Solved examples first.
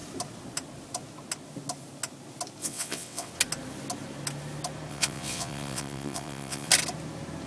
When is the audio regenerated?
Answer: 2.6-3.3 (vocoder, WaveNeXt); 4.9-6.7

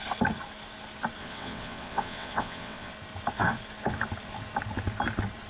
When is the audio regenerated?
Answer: 1.2-2.9 (vocoder, WaveNeXt)